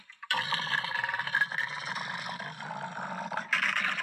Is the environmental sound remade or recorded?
recorded